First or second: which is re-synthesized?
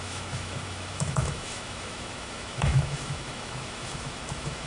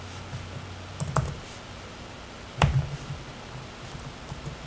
first